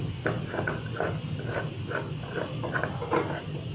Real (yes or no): yes